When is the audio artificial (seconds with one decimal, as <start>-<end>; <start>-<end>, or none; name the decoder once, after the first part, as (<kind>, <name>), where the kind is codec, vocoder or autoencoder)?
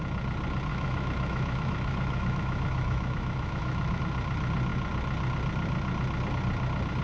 0.7-4.0 (autoencoder, DAC-VAE)